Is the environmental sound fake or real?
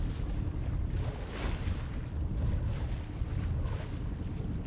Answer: real